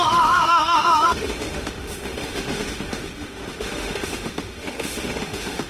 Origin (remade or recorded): remade